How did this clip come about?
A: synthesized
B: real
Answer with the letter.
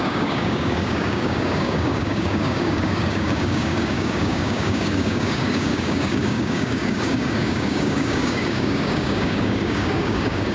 A